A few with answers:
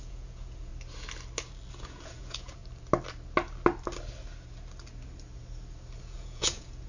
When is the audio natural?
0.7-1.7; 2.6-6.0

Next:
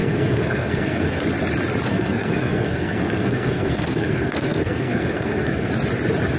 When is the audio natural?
1.2-1.9; 5.7-6.4

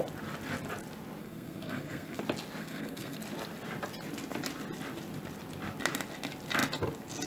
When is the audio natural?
0.0-1.2; 2.2-2.6; 3.2-7.3

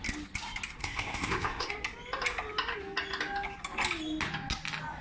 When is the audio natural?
0.0-0.8; 1.7-5.0

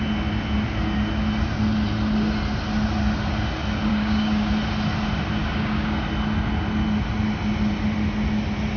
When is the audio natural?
0.0-3.9; 4.5-5.4; 6.0-8.8

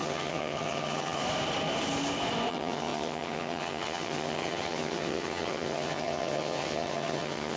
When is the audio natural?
1.2-2.5